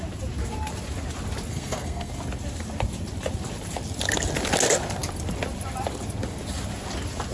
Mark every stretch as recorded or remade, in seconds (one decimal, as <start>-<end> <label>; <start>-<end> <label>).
0.0-1.5 recorded; 1.5-2.1 remade; 2.1-7.3 recorded